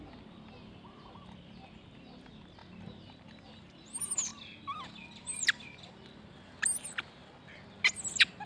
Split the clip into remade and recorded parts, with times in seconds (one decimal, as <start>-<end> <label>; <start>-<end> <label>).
0.0-8.5 recorded